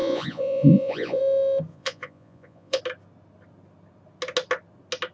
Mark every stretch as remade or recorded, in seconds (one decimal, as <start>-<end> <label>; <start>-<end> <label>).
0.0-1.2 remade; 1.2-1.7 recorded; 1.7-2.8 remade; 2.8-5.1 recorded